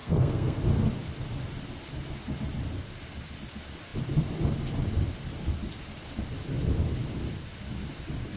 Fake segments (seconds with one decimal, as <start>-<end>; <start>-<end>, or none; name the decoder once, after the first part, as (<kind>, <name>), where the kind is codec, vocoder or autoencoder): 0.0-0.6 (codec, SNAC)